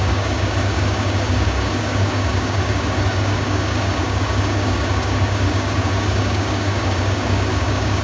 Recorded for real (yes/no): no